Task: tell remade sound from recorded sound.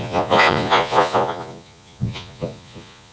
remade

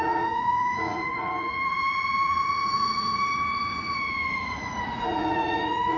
remade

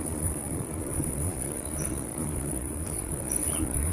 remade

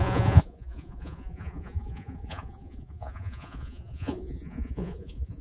remade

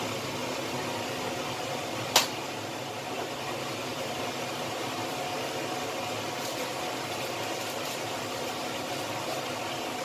recorded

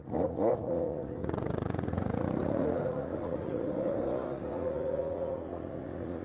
remade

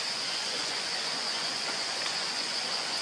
remade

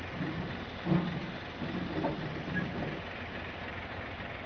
recorded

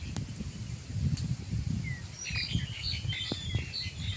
recorded